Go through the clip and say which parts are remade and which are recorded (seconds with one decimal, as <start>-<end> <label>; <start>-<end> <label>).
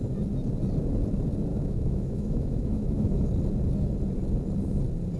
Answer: 0.0-1.5 recorded; 1.5-3.3 remade; 3.3-5.2 recorded